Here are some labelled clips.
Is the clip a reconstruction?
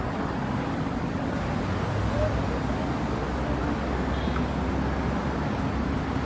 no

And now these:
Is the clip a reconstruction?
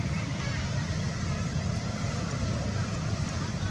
yes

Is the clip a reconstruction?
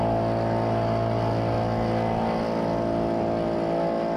no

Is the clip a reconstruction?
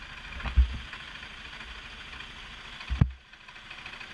no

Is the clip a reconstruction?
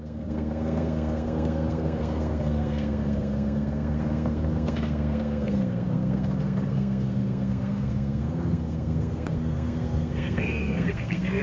yes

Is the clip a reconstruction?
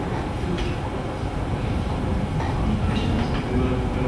no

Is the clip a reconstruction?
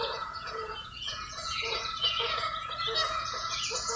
yes